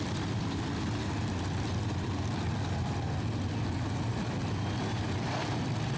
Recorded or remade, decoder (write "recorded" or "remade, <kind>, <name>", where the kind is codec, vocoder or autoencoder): recorded